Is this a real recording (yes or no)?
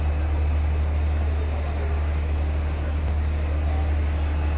yes